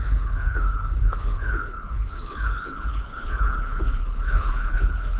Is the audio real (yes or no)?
no